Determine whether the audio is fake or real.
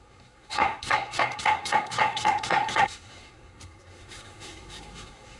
fake